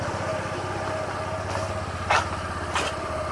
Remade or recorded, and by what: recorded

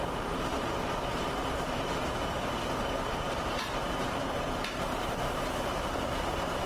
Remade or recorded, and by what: remade, vocoder, BigVGAN v2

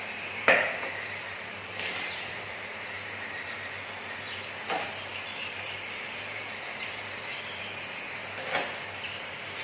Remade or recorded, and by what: remade, vocoder, BigVGAN v2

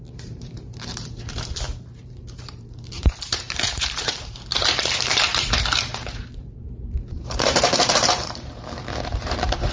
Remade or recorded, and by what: remade, vocoder, BigVGAN v2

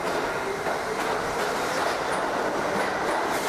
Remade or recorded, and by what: recorded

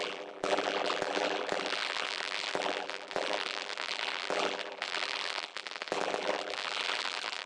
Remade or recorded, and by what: remade, vocoder, BigVGAN v2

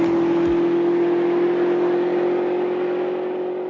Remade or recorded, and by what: recorded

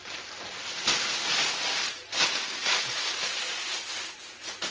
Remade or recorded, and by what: remade, vocoder, BigVGAN v2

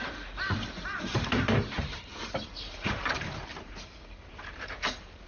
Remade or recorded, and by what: remade, vocoder, BigVGAN v2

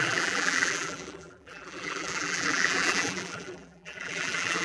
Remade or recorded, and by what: remade, vocoder, BigVGAN v2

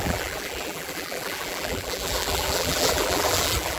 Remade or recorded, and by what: remade, vocoder, BigVGAN v2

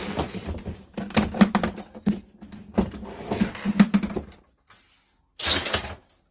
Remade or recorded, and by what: recorded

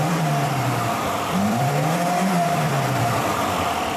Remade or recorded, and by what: remade, vocoder, BigVGAN v2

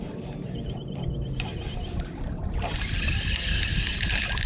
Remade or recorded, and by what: remade, vocoder, BigVGAN v2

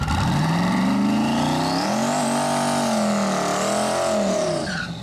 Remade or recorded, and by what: recorded